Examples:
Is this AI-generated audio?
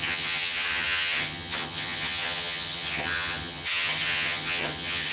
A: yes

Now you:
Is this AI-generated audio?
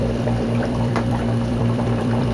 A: yes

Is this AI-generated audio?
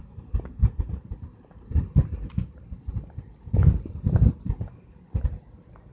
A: no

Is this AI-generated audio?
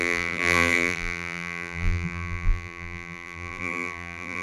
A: yes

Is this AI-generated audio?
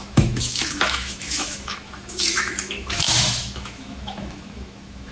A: yes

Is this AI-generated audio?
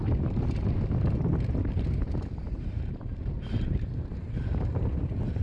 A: no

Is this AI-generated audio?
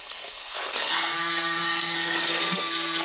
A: yes